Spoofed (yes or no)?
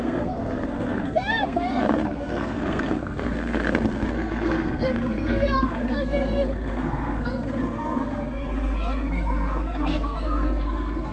yes